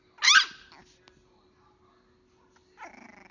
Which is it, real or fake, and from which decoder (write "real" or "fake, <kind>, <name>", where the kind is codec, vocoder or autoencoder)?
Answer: real